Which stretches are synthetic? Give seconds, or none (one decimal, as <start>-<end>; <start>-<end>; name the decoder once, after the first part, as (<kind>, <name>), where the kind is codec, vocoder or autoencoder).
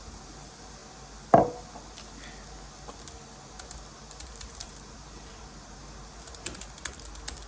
0.0-0.8 (vocoder, BigVGAN v2); 4.5-5.8